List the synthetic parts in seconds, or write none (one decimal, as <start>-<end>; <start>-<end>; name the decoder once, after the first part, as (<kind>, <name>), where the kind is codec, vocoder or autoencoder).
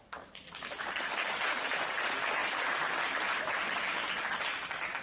none